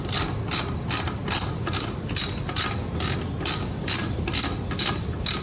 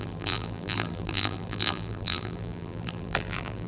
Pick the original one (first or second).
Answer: first